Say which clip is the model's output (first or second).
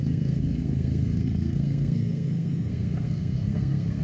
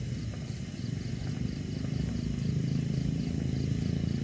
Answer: first